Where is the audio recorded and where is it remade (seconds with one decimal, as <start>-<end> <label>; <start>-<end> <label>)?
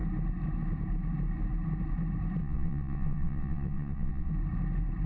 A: 0.0-2.4 recorded; 2.4-4.3 remade; 4.3-5.1 recorded